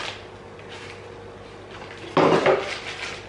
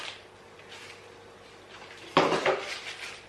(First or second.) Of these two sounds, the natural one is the first